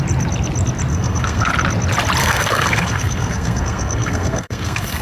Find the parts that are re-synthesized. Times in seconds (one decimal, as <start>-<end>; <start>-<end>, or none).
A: 0.9-1.5; 2.2-5.0